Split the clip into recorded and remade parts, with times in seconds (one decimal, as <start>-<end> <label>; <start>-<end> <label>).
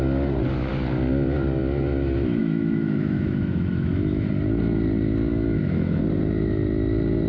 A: 0.0-2.4 recorded; 2.4-4.3 remade; 4.3-5.3 recorded; 5.3-6.0 remade; 6.0-7.3 recorded